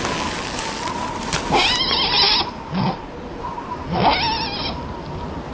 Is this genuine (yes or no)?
yes